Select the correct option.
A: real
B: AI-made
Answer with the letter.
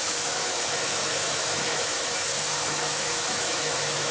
B